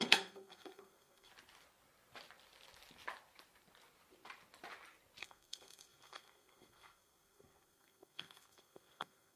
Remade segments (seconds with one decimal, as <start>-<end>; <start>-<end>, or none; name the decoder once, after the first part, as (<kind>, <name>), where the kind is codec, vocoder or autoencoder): 0.0-1.3 (codec, SNAC); 5.2-9.4